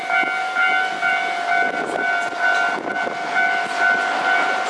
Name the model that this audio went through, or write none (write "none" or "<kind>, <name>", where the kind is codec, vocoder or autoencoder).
none